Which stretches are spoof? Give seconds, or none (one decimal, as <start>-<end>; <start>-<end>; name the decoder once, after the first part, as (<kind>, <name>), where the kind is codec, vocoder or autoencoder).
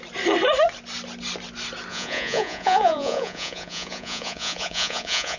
1.9-5.4 (vocoder, Vocos)